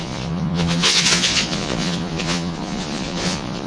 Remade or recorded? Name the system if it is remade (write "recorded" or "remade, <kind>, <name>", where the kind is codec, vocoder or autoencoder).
remade, vocoder, Vocos